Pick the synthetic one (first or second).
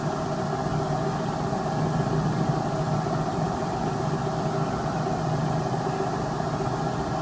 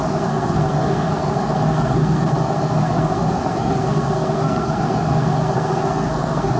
second